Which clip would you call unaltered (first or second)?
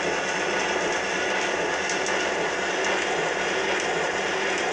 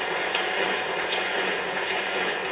first